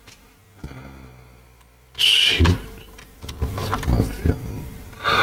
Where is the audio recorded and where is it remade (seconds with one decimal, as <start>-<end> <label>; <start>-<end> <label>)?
0.0-5.2 recorded